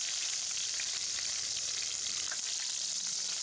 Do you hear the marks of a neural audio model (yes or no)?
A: yes